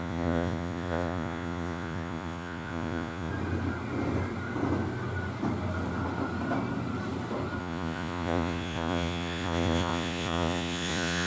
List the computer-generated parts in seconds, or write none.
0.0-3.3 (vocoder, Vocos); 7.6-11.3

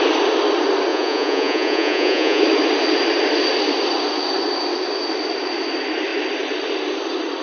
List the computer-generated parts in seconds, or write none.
0.9-2.4 (vocoder, Vocos)

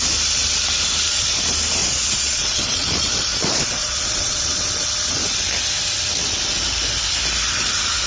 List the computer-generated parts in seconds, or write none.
1.8-4.6 (vocoder, Vocos)

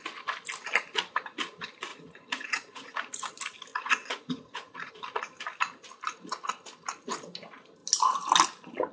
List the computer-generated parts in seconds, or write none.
1.9-3.3 (vocoder, Vocos); 3.7-4.9

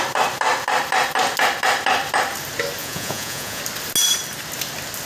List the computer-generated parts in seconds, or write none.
2.8-3.6 (vocoder, Vocos)

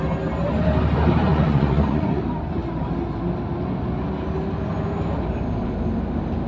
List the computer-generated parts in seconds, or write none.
1.3-2.2 (vocoder, Vocos)